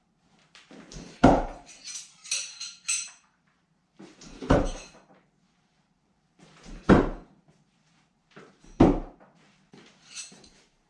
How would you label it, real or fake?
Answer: fake